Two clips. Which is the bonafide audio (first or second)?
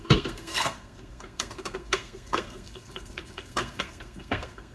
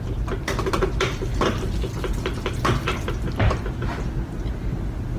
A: second